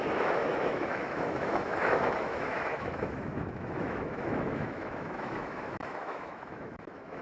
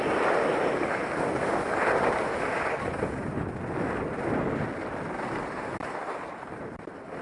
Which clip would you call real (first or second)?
second